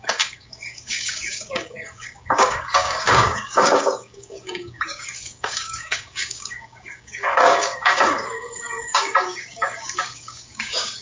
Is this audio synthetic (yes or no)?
yes